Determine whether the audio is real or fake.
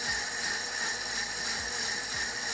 fake